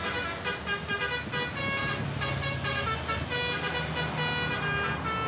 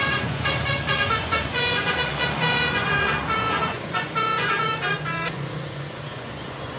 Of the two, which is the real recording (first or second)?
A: first